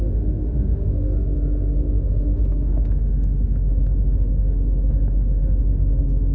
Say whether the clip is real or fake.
fake